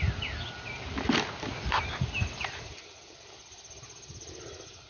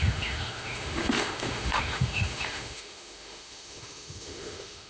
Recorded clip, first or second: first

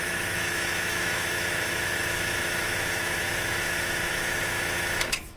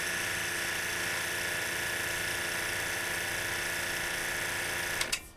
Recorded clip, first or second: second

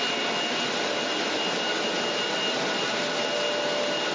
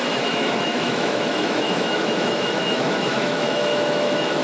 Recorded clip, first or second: first